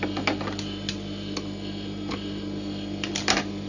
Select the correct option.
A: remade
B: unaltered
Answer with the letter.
B